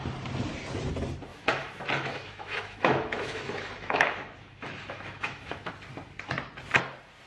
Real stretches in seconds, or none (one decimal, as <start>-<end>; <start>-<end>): 0.0-1.3; 5.7-7.3